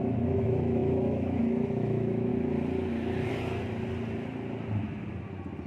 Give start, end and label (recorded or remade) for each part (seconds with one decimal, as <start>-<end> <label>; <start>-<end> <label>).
0.0-2.3 remade; 2.3-5.7 recorded